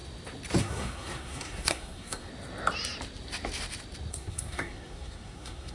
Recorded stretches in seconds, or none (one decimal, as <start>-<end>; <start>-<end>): 0.0-0.6; 2.3-4.1